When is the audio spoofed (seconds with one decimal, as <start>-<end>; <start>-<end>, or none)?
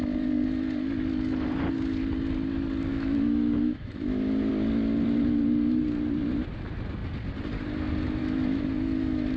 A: 2.9-4.5; 8.2-9.4